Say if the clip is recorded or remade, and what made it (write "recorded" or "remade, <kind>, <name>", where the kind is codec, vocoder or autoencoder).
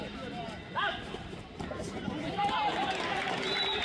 recorded